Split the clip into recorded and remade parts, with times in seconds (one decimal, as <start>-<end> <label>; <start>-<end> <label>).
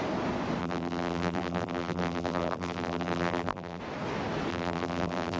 0.0-0.6 recorded; 0.6-3.8 remade; 3.8-4.5 recorded; 4.5-5.4 remade